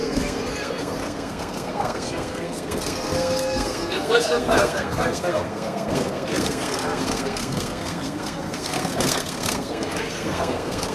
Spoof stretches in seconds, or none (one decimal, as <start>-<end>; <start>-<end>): 0.0-10.9